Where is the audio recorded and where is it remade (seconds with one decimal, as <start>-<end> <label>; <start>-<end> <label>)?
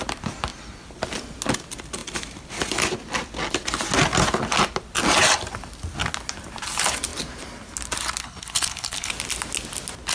0.0-8.2 recorded; 8.2-9.1 remade; 9.1-10.1 recorded